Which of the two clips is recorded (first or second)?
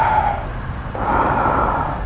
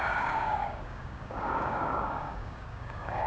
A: first